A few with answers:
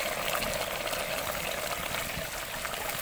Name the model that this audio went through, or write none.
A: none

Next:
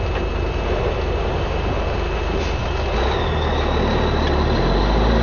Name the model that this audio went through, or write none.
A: none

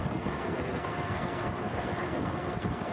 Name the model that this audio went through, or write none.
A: codec, SNAC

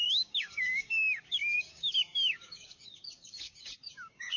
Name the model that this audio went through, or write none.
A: codec, DAC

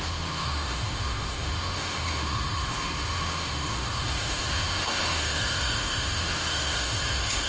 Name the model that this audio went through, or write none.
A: autoencoder, DAC-VAE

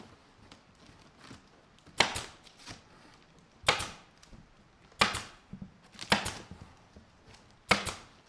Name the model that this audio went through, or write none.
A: none